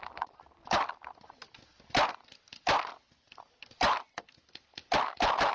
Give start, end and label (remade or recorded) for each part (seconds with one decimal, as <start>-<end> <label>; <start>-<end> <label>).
0.0-1.7 recorded; 1.7-5.0 remade; 5.0-5.5 recorded

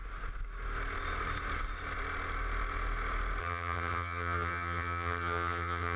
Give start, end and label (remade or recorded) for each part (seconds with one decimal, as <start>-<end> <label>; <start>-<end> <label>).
0.0-3.4 recorded; 3.4-6.0 remade

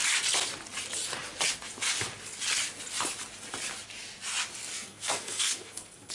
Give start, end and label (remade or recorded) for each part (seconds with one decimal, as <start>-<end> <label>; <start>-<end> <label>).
0.0-4.7 recorded; 4.7-6.1 remade

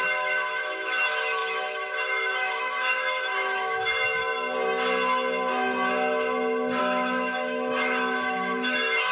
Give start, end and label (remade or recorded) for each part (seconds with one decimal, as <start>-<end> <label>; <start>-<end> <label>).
0.0-4.2 remade; 4.2-6.8 recorded; 6.8-9.1 remade

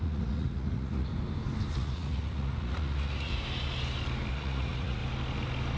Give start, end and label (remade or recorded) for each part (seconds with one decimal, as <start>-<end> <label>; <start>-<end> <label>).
0.0-1.1 remade; 1.1-1.7 recorded; 1.7-3.3 remade; 3.3-4.3 recorded; 4.3-5.0 remade; 5.0-5.8 recorded

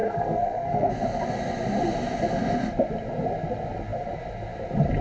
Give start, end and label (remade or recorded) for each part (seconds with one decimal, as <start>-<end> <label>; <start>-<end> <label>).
0.0-0.9 remade; 0.9-5.0 recorded

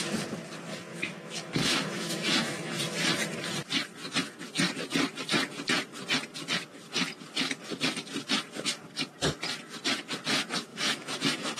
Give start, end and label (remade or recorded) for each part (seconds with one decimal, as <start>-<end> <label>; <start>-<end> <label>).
0.0-0.9 recorded; 0.9-2.8 remade; 2.8-10.7 recorded; 10.7-11.6 remade

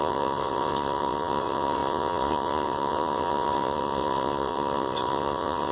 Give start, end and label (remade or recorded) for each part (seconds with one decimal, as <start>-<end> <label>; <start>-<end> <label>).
0.0-5.7 remade